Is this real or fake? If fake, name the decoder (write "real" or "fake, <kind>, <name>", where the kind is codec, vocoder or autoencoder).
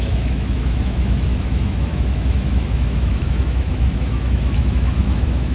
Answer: fake, autoencoder, DAC-VAE